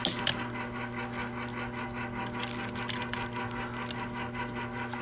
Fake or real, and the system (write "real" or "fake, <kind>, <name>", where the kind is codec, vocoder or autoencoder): real